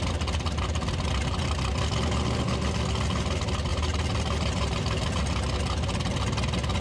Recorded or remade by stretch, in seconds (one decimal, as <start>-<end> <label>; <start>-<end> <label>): 0.0-3.7 recorded; 3.7-5.2 remade; 5.2-6.8 recorded